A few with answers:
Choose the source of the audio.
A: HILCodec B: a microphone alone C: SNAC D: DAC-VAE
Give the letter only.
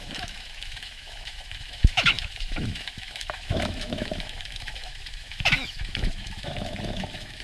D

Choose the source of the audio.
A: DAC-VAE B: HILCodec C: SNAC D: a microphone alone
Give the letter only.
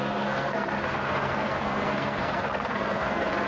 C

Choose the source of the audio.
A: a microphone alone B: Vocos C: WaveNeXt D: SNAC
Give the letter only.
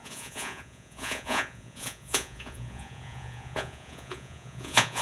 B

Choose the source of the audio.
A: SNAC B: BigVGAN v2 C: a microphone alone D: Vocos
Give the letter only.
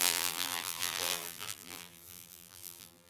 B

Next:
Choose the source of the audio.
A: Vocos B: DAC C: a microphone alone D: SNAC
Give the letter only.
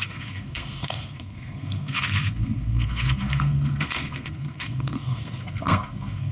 D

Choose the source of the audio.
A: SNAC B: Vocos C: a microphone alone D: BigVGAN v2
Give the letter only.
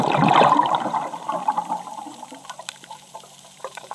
D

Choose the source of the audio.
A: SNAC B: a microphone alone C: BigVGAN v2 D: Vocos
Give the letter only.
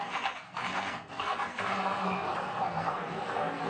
A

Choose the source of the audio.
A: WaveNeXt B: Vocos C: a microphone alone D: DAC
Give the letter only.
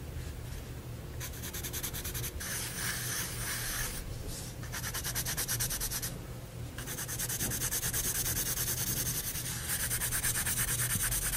C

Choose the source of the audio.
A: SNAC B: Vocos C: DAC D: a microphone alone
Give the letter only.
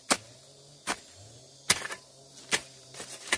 D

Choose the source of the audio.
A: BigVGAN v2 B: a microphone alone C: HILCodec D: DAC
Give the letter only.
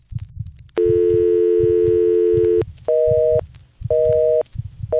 B